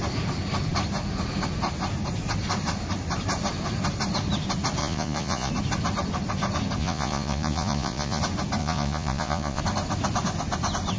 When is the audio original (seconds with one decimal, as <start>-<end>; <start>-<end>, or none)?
0.0-4.8; 5.5-6.8; 8.2-8.6; 9.6-11.0